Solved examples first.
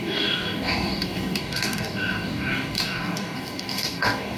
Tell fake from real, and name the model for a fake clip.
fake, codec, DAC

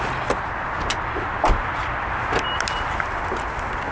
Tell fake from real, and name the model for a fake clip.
real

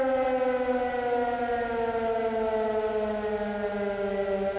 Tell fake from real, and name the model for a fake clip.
real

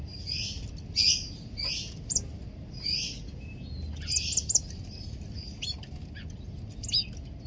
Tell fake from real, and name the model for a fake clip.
real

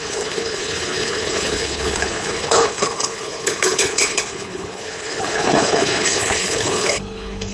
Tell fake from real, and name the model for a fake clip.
fake, codec, HILCodec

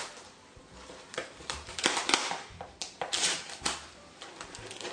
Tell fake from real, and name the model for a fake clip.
fake, vocoder, BigVGAN v2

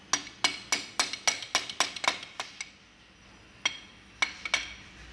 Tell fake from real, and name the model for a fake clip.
real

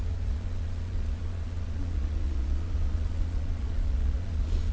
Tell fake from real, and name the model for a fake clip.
fake, vocoder, Vocos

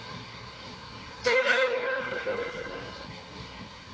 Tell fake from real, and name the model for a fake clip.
fake, codec, SNAC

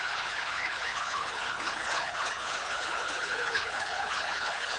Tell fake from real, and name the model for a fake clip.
fake, codec, HILCodec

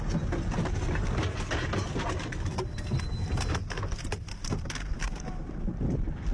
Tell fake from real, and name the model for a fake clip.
real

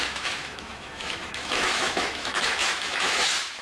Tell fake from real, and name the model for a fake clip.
fake, autoencoder, DAC-VAE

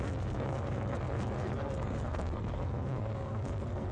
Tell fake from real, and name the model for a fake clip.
fake, codec, SNAC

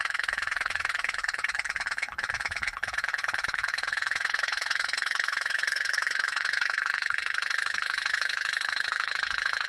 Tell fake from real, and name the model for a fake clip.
fake, codec, HILCodec